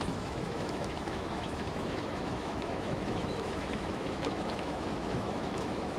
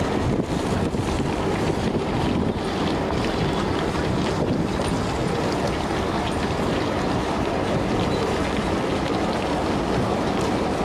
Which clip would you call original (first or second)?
second